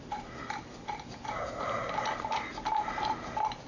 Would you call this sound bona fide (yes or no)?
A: yes